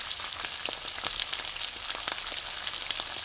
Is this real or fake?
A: real